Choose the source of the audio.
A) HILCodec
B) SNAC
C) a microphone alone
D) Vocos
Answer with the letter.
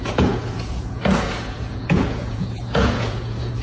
D